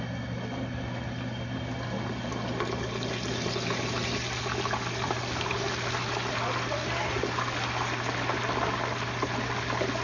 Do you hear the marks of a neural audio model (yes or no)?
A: no